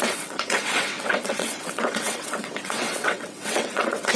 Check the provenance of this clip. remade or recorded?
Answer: remade